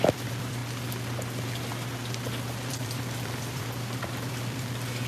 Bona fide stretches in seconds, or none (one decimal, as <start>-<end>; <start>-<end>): 0.6-2.7